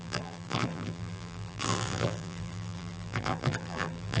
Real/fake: fake